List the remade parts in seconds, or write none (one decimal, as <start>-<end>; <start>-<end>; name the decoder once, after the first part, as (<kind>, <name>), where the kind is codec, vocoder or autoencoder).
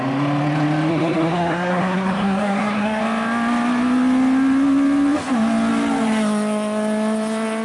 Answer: 0.9-3.0 (codec, SNAC)